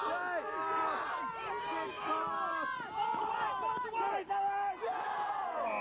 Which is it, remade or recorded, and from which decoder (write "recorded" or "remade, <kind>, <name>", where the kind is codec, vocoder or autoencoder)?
recorded